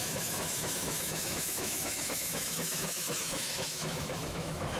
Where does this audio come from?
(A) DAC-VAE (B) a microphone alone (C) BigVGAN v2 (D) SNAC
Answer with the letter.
A